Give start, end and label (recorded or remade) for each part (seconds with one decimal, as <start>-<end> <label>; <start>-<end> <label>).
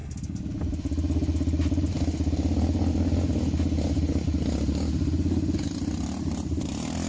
0.0-7.1 recorded